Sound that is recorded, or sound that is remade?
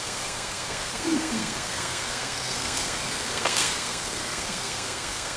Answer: remade